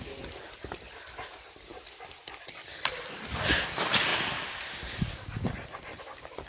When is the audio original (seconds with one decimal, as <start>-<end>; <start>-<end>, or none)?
0.0-6.5